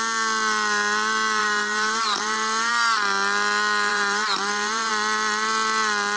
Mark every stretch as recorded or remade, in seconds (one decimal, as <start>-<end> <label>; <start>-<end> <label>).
0.0-1.4 recorded; 1.4-2.7 remade; 2.7-3.9 recorded; 3.9-4.9 remade; 4.9-6.2 recorded